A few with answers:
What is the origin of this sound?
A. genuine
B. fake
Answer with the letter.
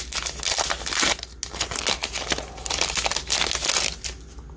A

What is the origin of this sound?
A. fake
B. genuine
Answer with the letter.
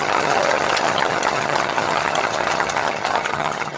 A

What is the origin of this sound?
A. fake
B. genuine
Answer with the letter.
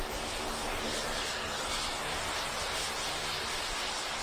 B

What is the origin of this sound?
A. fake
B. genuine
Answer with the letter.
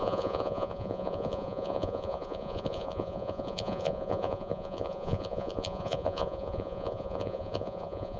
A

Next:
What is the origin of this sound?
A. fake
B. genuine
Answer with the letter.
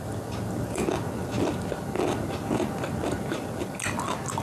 B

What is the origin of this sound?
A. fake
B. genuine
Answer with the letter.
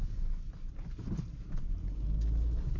B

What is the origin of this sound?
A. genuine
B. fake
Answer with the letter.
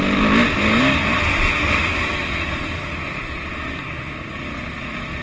A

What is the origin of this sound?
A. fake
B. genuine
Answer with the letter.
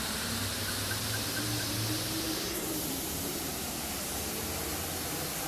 A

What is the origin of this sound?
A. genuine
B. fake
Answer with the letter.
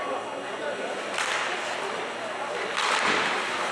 A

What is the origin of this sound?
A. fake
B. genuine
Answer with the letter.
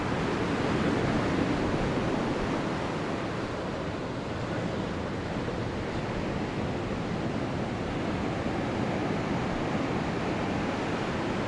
B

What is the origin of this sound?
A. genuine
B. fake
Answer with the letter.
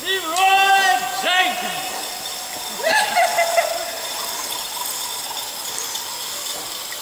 A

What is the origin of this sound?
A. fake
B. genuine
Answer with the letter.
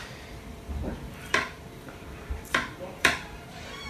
A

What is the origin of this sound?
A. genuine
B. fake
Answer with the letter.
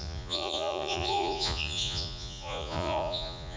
B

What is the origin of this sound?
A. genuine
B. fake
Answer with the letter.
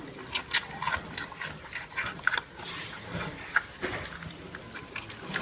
A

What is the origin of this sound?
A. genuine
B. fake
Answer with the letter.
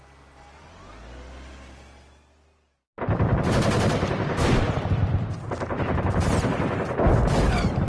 A